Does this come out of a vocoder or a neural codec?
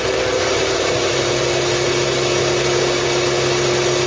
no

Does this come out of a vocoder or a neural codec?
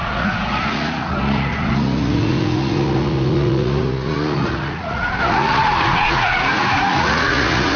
yes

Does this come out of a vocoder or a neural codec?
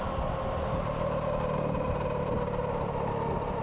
no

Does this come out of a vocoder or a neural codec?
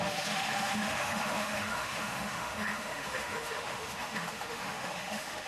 yes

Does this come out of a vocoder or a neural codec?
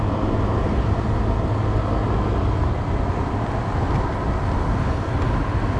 no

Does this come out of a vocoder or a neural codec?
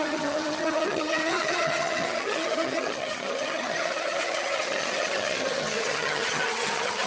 yes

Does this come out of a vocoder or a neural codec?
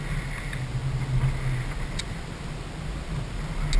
no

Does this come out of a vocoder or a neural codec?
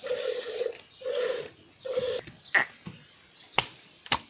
no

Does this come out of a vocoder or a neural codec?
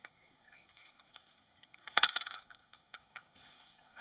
yes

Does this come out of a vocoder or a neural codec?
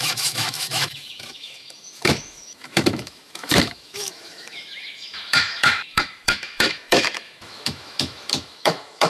yes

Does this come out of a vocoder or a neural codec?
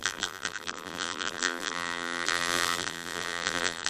yes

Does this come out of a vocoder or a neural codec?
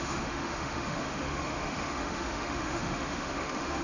yes